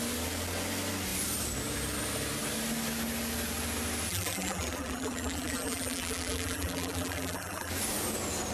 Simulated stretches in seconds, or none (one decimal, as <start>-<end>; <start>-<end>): 4.1-7.7

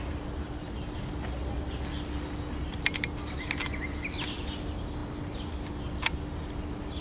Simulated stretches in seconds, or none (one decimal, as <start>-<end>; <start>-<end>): none

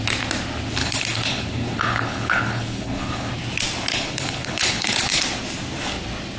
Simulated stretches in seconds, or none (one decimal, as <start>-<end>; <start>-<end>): 0.8-3.3; 3.9-5.2

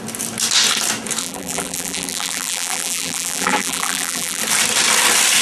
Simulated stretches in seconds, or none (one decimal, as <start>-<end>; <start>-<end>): 1.2-4.4

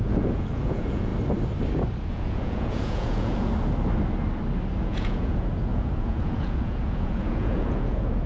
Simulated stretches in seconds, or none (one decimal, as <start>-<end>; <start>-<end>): 0.0-1.1; 2.1-3.5; 4.8-8.3

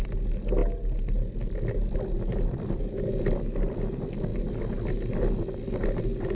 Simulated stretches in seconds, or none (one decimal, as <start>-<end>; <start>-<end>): none

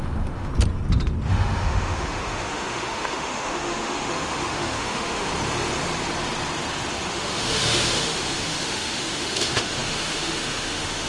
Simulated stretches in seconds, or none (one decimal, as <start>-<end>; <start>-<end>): 0.0-0.5; 1.3-5.3; 7.1-11.1

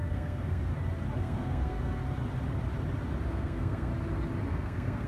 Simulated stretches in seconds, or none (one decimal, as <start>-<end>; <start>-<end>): 0.0-0.7; 1.2-2.0; 3.3-3.9; 4.5-5.1